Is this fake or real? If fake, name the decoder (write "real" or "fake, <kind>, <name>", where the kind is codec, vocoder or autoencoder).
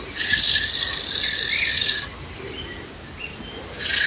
fake, vocoder, BigVGAN v2